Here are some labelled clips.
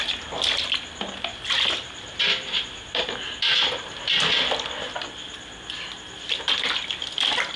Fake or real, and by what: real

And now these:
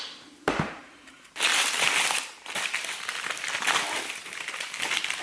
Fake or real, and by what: real